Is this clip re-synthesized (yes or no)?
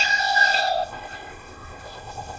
yes